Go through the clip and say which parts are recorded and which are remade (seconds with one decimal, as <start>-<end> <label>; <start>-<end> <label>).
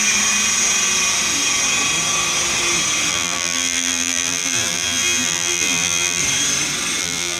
0.0-3.1 recorded; 3.1-6.2 remade; 6.2-7.0 recorded; 7.0-7.4 remade